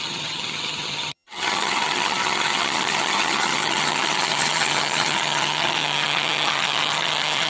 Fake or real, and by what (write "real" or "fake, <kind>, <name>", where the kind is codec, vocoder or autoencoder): fake, vocoder, HiFi-GAN